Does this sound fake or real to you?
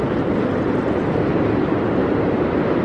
fake